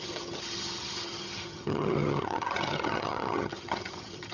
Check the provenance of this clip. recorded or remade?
remade